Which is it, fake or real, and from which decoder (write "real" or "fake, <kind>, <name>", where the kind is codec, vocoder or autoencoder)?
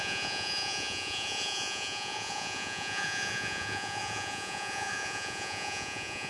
fake, vocoder, Vocos